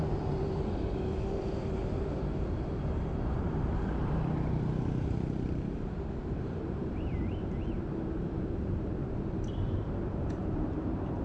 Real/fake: fake